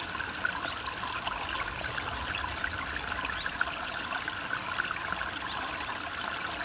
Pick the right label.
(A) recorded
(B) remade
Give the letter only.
A